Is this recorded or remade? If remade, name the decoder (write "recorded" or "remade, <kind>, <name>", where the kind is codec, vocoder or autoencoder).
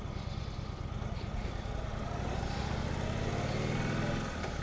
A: recorded